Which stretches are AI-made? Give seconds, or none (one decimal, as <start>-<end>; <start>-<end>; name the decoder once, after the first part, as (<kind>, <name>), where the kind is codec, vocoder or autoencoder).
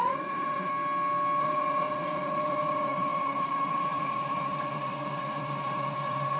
0.0-0.7 (vocoder, WaveNeXt); 1.4-6.4